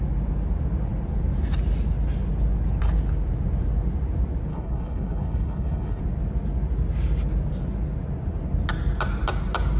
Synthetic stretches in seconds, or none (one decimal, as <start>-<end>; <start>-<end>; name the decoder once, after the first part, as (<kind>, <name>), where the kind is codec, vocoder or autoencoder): 4.5-6.0 (codec, HILCodec)